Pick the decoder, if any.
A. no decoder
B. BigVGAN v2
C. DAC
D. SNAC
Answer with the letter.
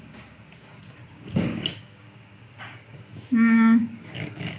C